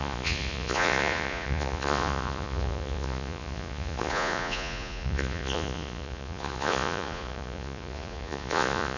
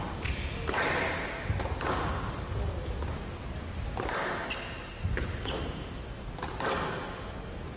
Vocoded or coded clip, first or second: first